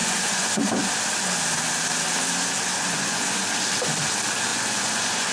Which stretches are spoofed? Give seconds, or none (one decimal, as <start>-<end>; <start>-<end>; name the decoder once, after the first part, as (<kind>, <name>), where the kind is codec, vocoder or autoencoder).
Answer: 0.0-0.6 (vocoder, Vocos); 2.7-3.4; 4.5-5.3